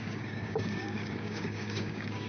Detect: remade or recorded remade